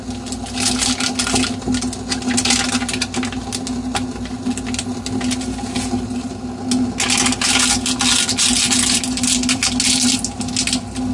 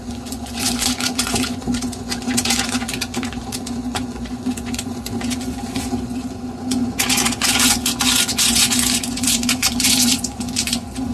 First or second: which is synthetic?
second